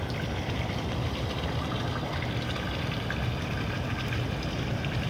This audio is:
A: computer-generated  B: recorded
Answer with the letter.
B